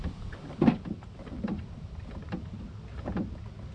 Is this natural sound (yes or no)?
yes